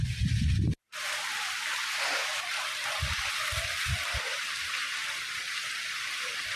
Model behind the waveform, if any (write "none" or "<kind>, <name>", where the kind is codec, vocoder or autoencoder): none